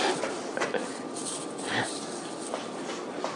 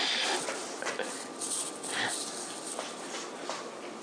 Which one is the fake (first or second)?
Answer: first